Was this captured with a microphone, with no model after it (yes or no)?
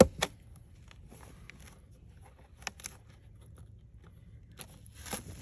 yes